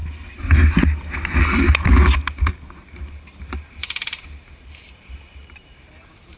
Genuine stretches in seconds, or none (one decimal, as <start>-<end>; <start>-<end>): 0.0-3.8